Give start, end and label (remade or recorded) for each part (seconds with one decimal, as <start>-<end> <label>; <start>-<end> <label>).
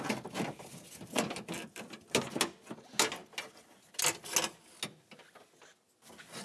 0.0-6.4 recorded